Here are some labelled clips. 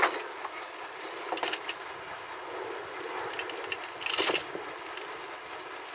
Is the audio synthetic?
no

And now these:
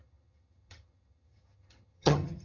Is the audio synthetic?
yes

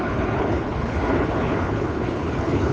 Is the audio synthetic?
yes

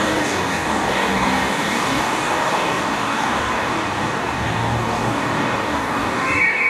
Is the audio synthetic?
yes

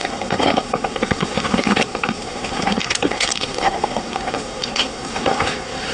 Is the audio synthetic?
yes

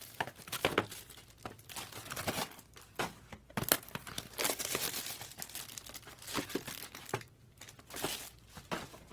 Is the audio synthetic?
no